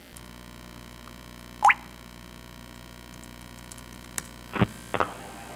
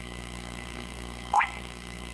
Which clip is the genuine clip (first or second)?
first